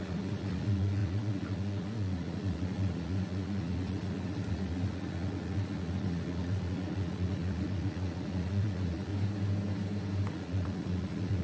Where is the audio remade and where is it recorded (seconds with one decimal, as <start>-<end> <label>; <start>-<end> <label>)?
0.0-9.1 remade; 9.1-10.3 recorded; 10.3-11.4 remade